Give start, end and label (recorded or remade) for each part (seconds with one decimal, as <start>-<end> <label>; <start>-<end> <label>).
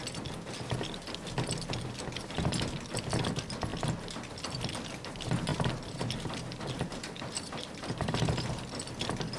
0.0-5.5 recorded; 5.5-8.5 remade; 8.5-9.4 recorded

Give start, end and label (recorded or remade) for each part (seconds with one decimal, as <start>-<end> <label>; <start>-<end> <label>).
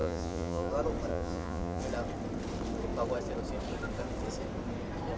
0.0-0.7 remade; 0.7-1.1 recorded; 1.1-1.8 remade; 1.8-5.2 recorded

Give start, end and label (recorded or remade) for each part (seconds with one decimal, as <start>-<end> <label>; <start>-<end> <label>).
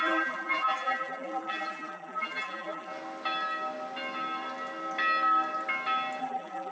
0.0-2.9 remade; 2.9-6.2 recorded; 6.2-6.7 remade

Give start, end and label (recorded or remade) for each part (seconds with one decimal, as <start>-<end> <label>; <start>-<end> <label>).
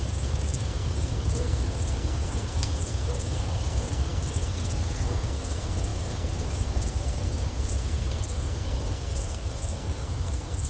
0.0-10.7 remade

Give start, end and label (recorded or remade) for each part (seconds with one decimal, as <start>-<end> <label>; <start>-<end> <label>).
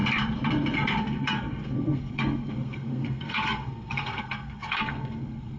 0.0-1.0 recorded; 1.0-5.6 remade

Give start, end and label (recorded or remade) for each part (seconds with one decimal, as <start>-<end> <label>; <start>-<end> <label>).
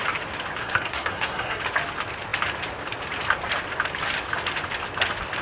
0.0-0.6 recorded; 0.6-1.6 remade; 1.6-5.4 recorded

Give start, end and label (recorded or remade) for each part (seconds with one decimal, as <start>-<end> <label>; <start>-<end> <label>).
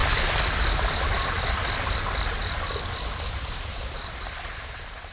0.0-2.0 recorded; 2.0-2.4 remade; 2.4-3.0 recorded; 3.0-5.1 remade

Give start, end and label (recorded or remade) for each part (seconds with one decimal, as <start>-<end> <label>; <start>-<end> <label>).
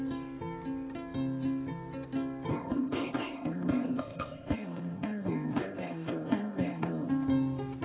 0.0-2.5 recorded; 2.5-7.1 remade; 7.1-7.8 recorded